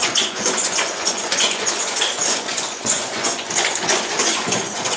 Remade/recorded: remade